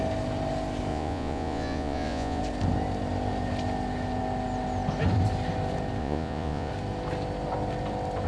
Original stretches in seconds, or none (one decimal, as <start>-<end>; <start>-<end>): 0.0-0.9; 2.4-6.0; 6.7-8.3